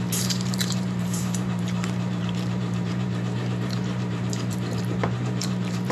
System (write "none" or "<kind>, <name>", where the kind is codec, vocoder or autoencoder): vocoder, BigVGAN v2